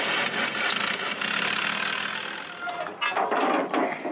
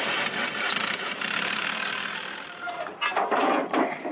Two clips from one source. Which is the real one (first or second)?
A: first